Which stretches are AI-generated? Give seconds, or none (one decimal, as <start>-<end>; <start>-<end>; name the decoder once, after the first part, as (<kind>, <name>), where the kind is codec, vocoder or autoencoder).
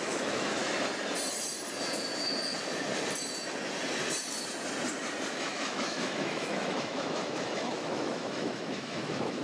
0.0-0.6 (autoencoder, DAC-VAE); 5.3-9.4